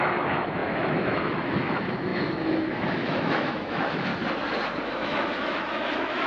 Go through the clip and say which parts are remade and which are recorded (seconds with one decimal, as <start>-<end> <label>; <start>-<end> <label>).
0.0-4.1 remade; 4.1-4.8 recorded; 4.8-6.3 remade